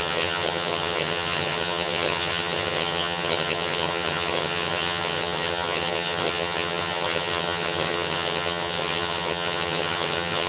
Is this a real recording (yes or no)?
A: no